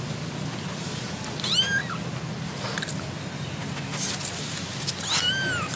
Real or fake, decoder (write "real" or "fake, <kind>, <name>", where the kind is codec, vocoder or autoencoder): real